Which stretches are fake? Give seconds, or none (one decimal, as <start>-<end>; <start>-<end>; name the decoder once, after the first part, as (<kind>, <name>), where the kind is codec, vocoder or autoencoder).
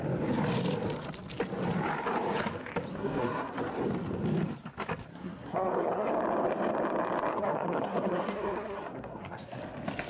2.9-3.6 (codec, SNAC); 5.1-6.1; 7.3-9.6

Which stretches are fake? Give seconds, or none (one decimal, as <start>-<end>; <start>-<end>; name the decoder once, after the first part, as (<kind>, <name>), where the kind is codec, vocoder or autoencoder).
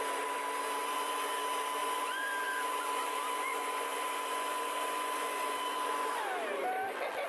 0.8-1.4 (vocoder, Vocos); 1.8-6.2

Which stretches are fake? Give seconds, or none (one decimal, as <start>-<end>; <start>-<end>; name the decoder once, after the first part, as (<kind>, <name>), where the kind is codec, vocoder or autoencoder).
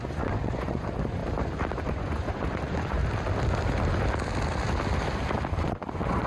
0.0-1.2 (vocoder, Vocos); 1.8-3.0; 5.6-6.3